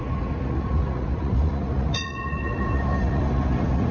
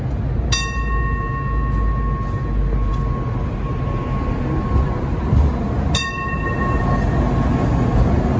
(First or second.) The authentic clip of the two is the second